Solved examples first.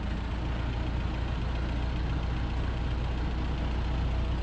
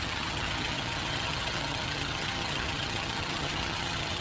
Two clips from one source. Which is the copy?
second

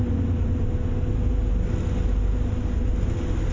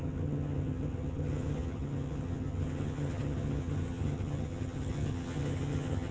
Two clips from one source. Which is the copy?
second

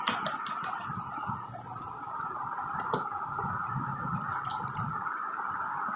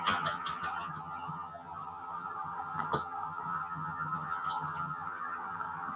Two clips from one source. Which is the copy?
second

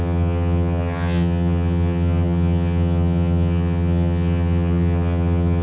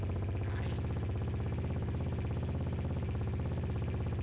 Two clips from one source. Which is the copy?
first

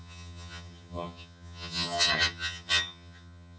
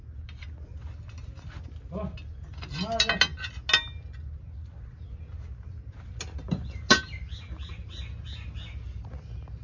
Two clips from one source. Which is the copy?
first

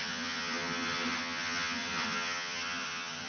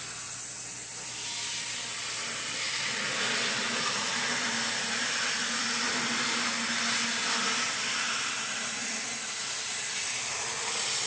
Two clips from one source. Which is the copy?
first